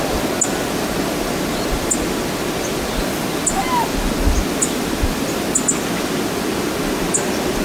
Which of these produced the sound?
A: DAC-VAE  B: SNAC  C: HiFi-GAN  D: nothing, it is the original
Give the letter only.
D